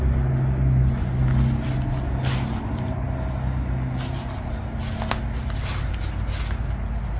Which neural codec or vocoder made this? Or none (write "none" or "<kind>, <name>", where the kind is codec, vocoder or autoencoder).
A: none